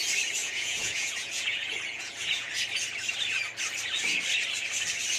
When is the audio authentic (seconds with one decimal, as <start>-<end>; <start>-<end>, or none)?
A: 0.0-0.4; 2.5-5.2